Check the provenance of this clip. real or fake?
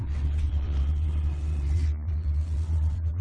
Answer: fake